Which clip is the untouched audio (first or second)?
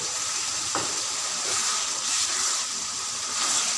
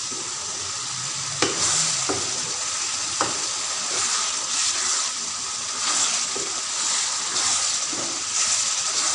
second